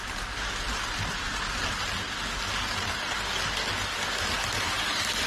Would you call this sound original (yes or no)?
yes